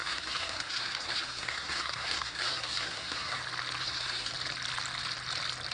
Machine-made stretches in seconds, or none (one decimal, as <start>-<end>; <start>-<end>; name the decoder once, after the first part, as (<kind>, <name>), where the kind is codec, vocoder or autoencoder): 0.0-3.4 (codec, SNAC); 3.8-4.3